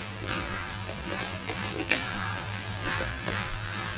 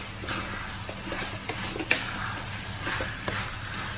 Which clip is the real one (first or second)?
second